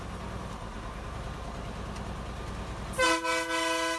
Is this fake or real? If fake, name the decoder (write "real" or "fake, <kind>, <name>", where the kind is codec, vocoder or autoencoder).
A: real